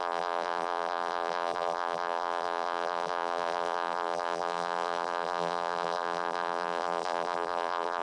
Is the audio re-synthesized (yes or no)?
yes